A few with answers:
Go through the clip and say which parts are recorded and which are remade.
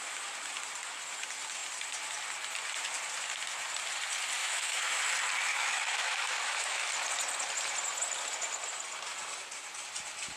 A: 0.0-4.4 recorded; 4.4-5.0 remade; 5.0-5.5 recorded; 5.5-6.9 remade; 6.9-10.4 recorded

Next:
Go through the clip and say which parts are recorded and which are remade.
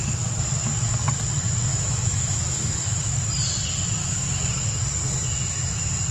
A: 0.0-1.7 recorded; 1.7-3.1 remade; 3.1-4.0 recorded; 4.0-4.5 remade; 4.5-6.1 recorded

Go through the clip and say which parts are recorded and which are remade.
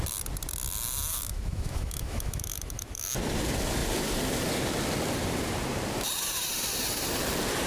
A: 0.0-1.1 recorded; 1.1-3.1 remade; 3.1-7.7 recorded